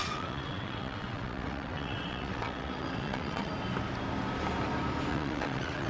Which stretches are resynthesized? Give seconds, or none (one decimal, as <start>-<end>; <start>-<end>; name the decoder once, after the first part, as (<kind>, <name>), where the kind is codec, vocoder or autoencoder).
0.0-3.5 (vocoder, WaveNeXt); 5.1-5.9